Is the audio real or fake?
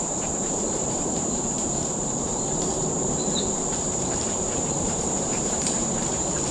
fake